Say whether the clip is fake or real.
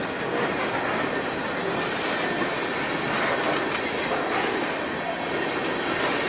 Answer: real